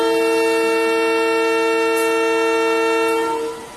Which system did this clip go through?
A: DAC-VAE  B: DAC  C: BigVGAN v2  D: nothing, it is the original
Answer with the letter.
D